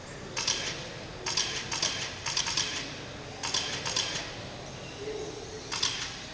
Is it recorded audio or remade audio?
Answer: recorded